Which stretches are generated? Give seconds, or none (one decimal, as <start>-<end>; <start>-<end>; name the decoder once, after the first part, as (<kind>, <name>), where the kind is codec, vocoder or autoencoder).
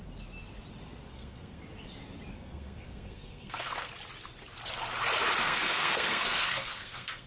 1.1-1.6 (codec, SNAC); 2.3-3.9; 5.4-7.3